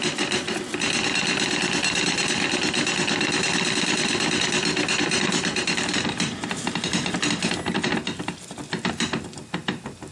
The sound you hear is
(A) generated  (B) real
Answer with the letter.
B